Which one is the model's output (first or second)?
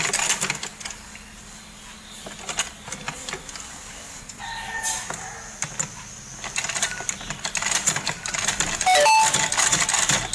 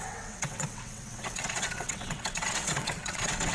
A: second